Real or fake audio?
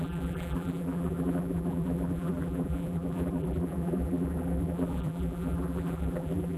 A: fake